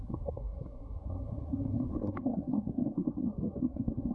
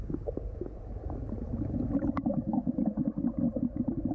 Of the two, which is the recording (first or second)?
second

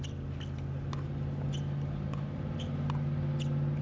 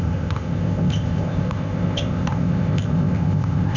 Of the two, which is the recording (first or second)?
first